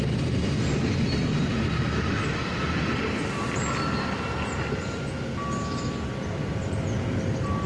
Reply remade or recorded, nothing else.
recorded